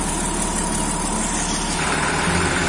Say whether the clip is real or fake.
real